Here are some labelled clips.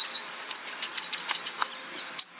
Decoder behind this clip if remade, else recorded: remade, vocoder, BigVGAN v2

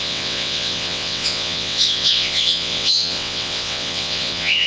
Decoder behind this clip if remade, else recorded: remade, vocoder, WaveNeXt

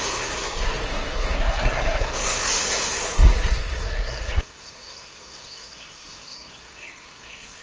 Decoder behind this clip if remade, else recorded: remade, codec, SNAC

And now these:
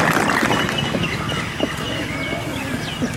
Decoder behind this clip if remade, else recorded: recorded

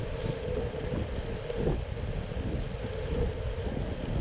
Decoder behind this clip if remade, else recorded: recorded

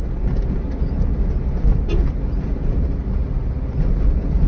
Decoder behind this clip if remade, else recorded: recorded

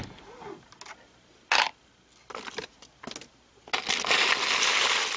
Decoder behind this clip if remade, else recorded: recorded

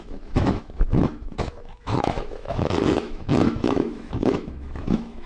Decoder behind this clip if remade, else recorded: remade, autoencoder, DAC-VAE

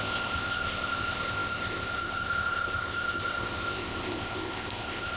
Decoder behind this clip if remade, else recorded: remade, codec, ZipCodec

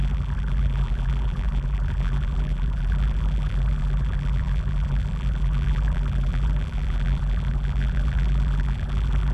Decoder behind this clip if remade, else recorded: remade, vocoder, BigVGAN v2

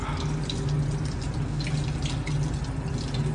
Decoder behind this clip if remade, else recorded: recorded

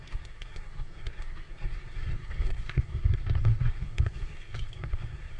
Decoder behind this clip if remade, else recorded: remade, codec, SNAC